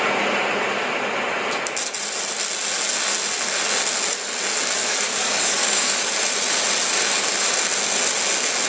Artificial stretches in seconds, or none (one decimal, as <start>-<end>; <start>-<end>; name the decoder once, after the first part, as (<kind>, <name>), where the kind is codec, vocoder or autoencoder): 4.8-6.1 (codec, DAC)